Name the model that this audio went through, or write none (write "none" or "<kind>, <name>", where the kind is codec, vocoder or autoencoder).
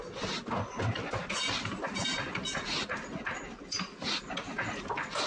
none